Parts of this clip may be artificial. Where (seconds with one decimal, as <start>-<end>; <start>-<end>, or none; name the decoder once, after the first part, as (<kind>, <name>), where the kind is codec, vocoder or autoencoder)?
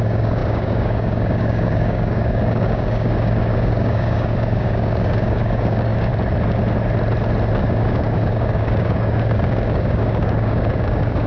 0.0-6.1 (codec, DAC); 7.6-11.3